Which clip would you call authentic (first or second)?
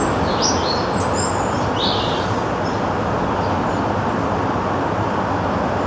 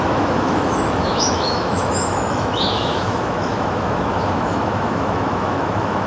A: first